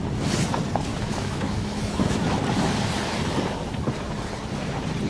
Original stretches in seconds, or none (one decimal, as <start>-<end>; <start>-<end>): 0.0-0.9; 2.4-5.1